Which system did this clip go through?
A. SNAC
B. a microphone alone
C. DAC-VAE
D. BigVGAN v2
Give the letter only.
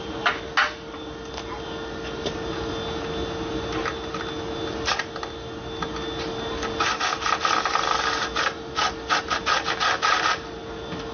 B